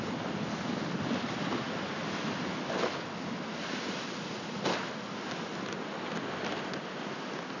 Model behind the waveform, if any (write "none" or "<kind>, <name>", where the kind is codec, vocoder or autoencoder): none